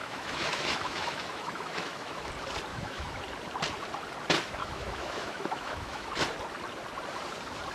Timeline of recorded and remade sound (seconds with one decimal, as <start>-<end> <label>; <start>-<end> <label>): 0.0-2.3 remade; 2.3-2.7 recorded; 2.7-3.2 remade; 3.2-4.6 recorded; 4.6-6.1 remade; 6.1-7.7 recorded